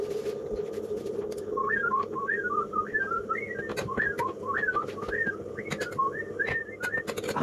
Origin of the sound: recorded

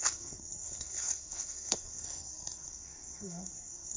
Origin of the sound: remade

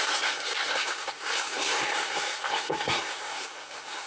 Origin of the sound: remade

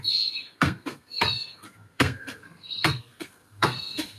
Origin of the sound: remade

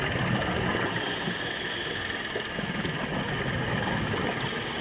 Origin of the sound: recorded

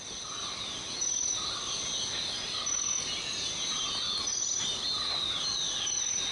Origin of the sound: recorded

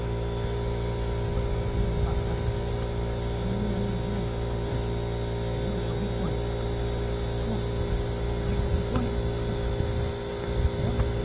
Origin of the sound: recorded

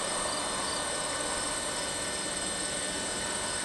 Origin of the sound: recorded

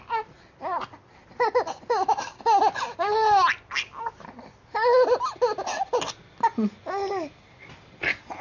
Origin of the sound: recorded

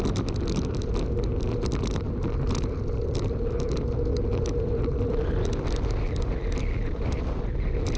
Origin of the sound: recorded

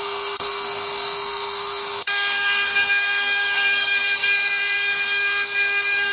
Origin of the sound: remade